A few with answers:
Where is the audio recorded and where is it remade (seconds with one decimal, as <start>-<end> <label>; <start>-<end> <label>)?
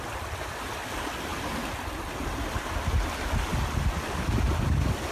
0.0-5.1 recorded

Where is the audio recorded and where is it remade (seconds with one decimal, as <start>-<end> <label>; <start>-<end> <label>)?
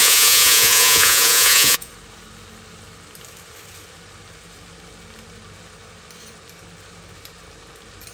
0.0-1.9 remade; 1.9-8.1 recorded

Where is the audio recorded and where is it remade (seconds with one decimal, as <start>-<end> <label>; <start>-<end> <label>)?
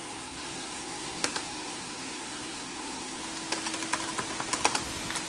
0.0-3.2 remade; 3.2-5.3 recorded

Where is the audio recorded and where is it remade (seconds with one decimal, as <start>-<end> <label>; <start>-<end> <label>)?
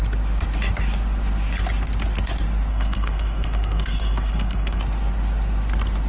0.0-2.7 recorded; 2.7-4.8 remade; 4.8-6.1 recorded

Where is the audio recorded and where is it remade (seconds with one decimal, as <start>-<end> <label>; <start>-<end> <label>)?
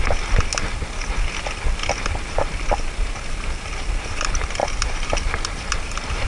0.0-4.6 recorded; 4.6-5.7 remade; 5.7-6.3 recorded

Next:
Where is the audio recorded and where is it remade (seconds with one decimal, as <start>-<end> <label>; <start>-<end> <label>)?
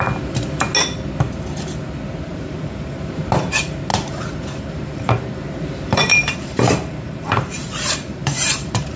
0.0-2.3 recorded; 2.3-3.2 remade; 3.2-3.9 recorded; 3.9-9.0 remade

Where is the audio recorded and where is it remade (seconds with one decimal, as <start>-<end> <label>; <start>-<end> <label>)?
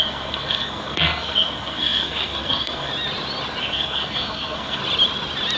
0.0-2.9 remade; 2.9-3.6 recorded; 3.6-4.8 remade; 4.8-5.6 recorded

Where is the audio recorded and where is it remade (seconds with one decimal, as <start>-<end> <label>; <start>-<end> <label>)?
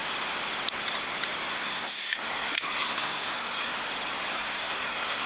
0.0-1.5 recorded; 1.5-3.7 remade; 3.7-4.3 recorded; 4.3-5.3 remade